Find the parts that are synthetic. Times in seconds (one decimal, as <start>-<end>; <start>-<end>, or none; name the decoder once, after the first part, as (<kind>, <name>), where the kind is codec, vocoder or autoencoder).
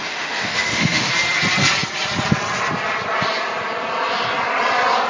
0.0-1.1 (autoencoder, DAC-VAE)